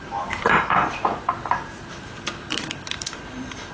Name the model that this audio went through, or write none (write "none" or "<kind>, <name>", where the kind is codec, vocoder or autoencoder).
vocoder, BigVGAN v2